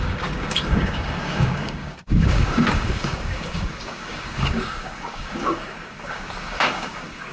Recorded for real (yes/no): no